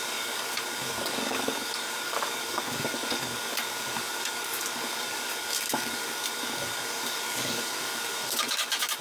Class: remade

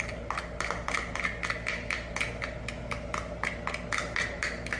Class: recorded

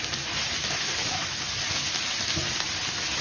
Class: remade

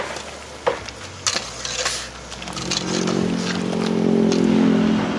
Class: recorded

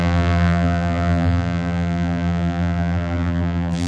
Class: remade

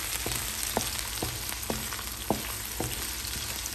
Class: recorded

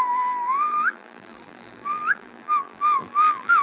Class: remade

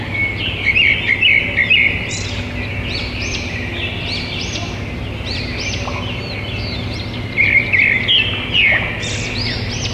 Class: recorded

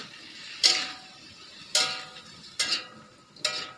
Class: recorded